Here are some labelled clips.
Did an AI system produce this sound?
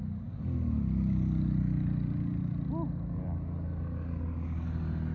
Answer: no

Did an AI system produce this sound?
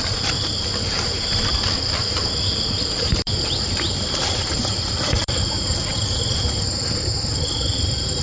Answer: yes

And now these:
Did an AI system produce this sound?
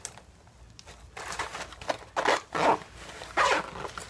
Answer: no